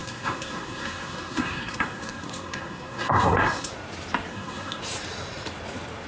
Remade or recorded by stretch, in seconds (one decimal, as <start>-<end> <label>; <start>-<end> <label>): 0.0-3.7 remade; 3.7-4.3 recorded; 4.3-4.8 remade; 4.8-6.1 recorded